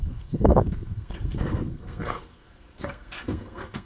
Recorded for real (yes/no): no